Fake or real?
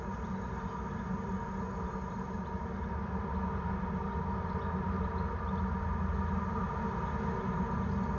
real